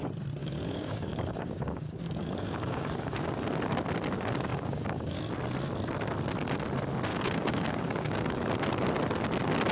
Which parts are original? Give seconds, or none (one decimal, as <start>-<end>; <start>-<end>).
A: 0.0-0.4; 3.3-4.5; 5.2-7.1; 8.5-9.7